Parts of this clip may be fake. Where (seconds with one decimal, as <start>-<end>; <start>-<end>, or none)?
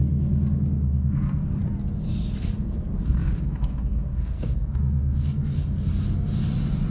0.0-1.6; 2.4-5.9